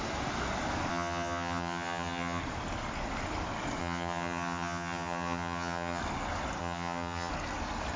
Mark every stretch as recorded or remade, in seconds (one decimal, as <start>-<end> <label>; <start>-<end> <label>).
0.0-0.9 recorded; 0.9-2.4 remade; 2.4-3.8 recorded; 3.8-6.0 remade; 6.0-6.6 recorded; 6.6-7.3 remade; 7.3-8.0 recorded